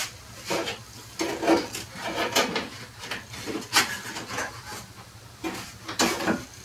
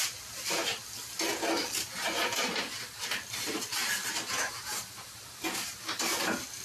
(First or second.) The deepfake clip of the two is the second